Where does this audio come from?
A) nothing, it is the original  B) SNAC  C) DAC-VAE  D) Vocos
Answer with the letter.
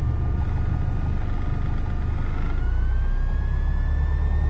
A